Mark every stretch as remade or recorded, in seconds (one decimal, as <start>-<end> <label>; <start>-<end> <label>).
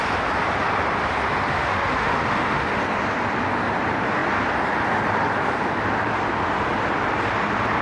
0.0-1.4 recorded; 1.4-2.8 remade; 2.8-7.8 recorded